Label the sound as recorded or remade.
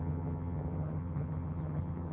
remade